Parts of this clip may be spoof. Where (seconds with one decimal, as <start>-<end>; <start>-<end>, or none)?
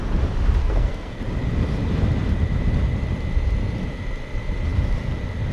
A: 0.6-1.2